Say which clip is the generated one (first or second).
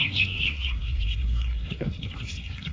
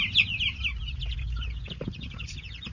first